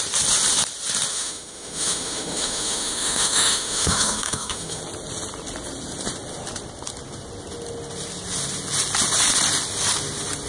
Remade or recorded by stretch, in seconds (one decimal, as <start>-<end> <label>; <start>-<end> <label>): 0.0-1.1 recorded; 1.1-4.8 remade; 4.8-10.5 recorded

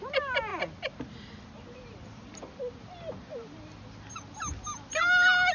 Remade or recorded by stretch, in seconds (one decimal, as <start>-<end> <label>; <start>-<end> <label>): 0.0-5.5 recorded

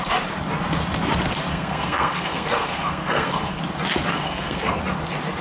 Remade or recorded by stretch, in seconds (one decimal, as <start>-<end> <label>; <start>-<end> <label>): 0.0-1.5 recorded; 1.5-3.6 remade; 3.6-4.1 recorded; 4.1-4.8 remade; 4.8-5.4 recorded

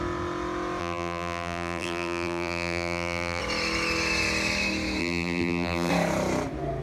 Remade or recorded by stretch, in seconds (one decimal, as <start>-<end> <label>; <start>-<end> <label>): 0.0-0.8 recorded; 0.8-3.4 remade; 3.4-5.0 recorded; 5.0-5.9 remade; 5.9-6.8 recorded

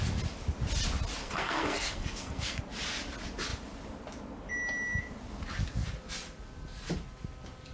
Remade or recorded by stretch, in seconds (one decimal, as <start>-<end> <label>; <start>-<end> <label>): 0.0-1.2 recorded; 1.2-2.6 remade; 2.6-7.7 recorded

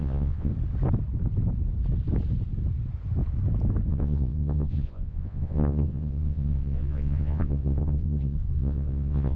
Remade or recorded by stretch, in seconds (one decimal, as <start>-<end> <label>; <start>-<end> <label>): 0.0-0.5 remade; 0.5-3.9 recorded; 3.9-9.4 remade